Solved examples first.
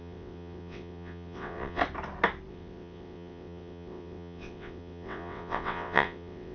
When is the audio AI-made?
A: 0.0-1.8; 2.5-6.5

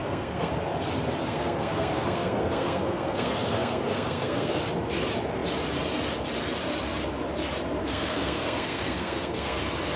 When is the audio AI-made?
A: 0.0-0.5; 1.2-4.6; 7.8-9.6